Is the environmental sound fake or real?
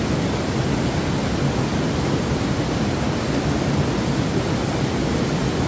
real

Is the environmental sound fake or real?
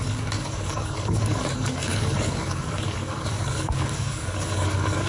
fake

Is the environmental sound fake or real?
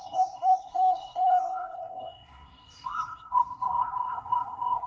fake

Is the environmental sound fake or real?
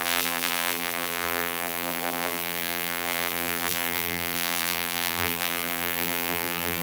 fake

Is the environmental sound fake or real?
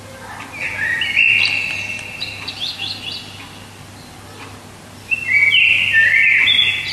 real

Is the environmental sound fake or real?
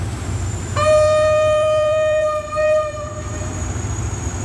fake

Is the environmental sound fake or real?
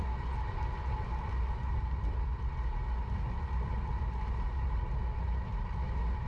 real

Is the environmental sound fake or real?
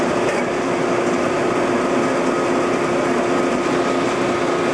real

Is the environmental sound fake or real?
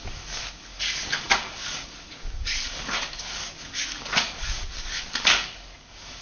fake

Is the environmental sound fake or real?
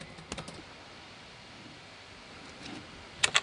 real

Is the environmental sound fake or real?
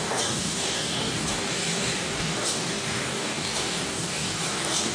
fake